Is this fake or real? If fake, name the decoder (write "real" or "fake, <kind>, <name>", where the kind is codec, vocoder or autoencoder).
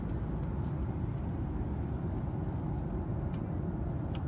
real